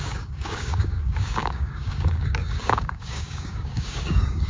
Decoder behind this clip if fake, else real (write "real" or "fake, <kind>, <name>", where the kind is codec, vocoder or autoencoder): fake, codec, DAC